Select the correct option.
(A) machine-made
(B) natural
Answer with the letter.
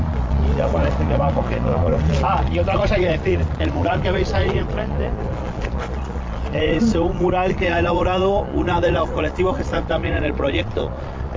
A